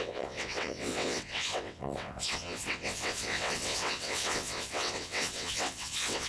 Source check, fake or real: fake